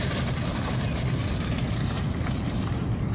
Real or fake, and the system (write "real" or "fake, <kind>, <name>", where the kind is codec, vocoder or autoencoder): fake, vocoder, BigVGAN v2